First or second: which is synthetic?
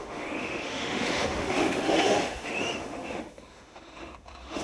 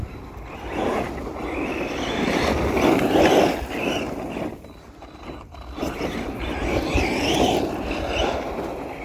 first